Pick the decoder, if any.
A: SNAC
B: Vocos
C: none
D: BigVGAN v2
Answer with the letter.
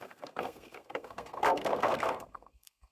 A